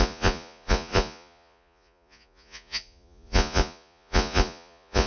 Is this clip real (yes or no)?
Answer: no